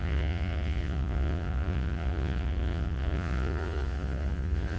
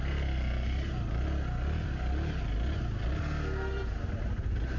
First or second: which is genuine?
second